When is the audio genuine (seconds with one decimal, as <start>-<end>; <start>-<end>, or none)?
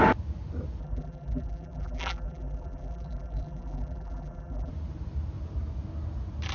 0.0-0.8; 4.7-6.5